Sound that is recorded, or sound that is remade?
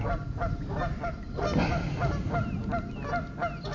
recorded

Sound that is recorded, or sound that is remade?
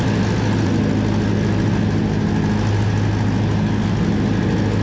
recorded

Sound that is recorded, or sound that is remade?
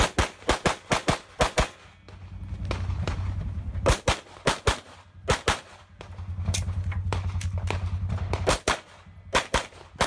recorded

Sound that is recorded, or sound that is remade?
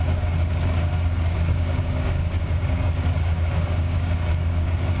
remade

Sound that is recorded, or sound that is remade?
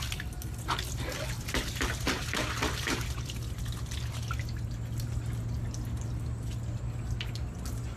recorded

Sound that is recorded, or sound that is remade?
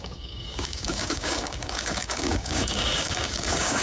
remade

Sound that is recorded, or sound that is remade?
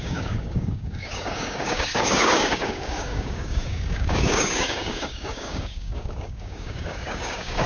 remade